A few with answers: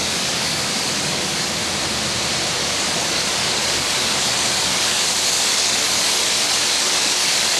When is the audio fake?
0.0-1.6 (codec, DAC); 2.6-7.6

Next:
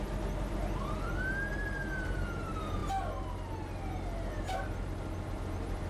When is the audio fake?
none